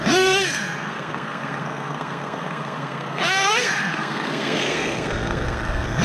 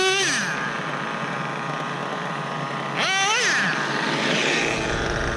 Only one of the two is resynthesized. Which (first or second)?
first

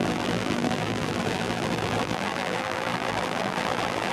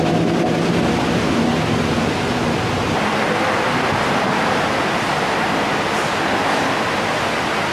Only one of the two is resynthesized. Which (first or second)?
first